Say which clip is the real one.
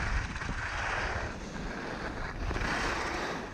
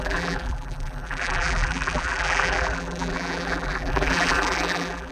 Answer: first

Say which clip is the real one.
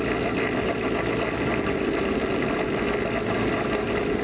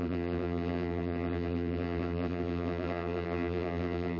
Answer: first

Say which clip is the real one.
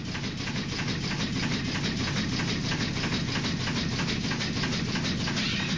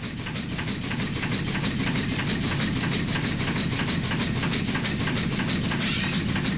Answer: first